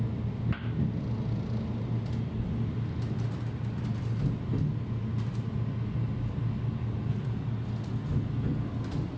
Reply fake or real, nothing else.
real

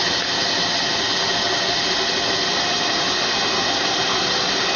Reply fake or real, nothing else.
real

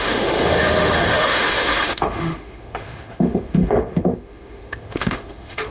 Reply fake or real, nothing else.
fake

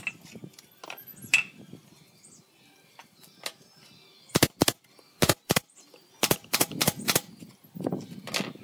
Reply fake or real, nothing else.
real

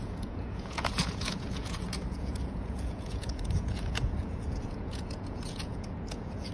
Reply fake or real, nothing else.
fake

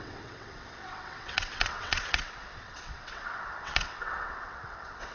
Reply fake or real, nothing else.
fake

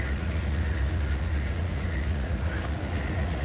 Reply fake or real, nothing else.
fake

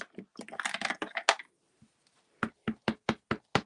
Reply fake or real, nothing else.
real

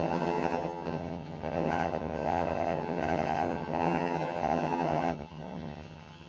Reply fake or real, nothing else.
fake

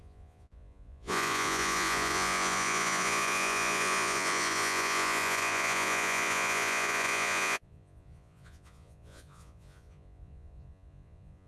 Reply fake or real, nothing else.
fake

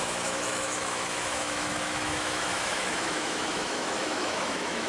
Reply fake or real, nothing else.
fake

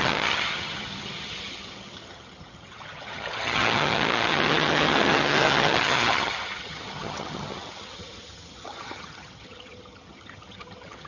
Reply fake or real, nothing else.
fake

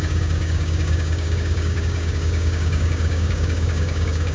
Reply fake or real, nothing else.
fake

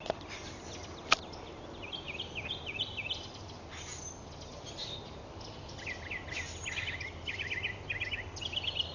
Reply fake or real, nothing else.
real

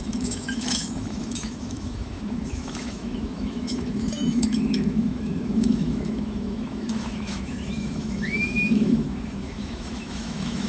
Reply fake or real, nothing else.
fake